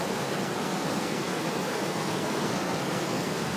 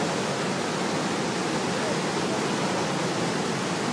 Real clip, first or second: second